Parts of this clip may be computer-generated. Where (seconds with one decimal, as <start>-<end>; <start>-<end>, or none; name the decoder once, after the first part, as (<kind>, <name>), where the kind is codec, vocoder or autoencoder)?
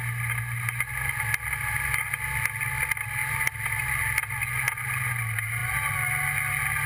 none